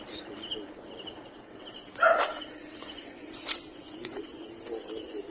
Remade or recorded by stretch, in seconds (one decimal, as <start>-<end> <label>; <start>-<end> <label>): 0.0-2.8 recorded; 2.8-4.5 remade; 4.5-5.3 recorded